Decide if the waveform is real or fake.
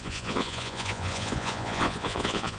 fake